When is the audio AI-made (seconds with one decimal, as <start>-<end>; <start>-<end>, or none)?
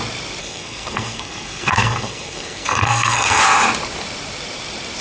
0.4-3.4